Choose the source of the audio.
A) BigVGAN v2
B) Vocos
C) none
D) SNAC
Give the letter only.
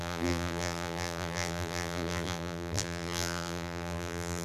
A